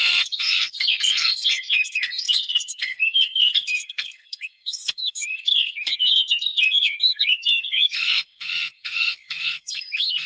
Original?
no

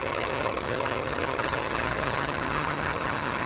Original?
no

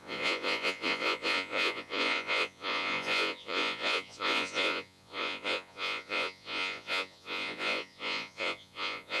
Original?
no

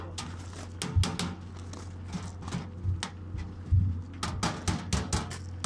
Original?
yes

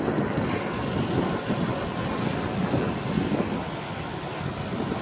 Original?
yes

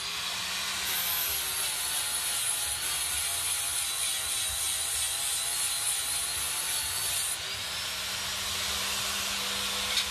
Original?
yes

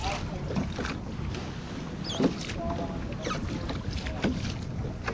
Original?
yes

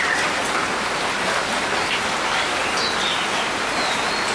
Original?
yes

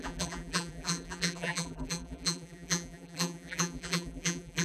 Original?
no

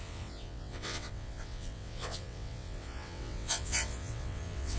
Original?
no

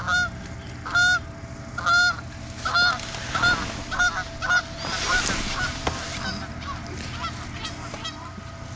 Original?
yes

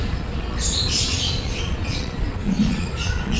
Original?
no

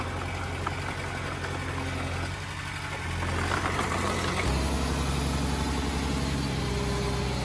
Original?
yes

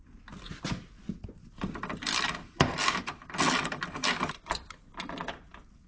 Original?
yes